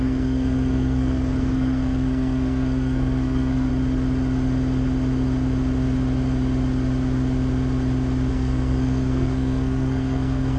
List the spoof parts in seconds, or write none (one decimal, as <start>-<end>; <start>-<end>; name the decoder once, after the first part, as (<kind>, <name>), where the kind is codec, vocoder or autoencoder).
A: 0.0-3.7 (codec, SNAC); 8.3-10.6